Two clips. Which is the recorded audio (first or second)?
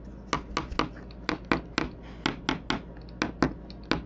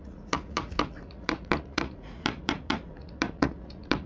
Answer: first